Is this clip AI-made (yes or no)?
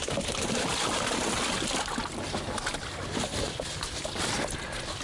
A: no